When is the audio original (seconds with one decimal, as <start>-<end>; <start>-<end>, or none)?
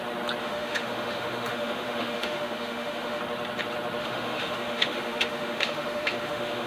0.0-0.4; 3.2-4.0